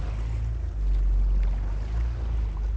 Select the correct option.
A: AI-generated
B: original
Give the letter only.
B